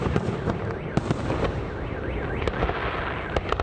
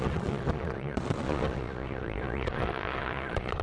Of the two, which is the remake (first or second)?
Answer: second